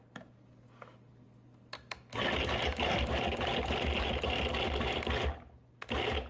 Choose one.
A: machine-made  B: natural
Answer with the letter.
B